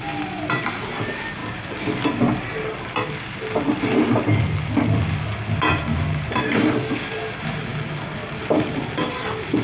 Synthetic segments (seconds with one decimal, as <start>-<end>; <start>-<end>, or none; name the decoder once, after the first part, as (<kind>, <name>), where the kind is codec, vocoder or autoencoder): none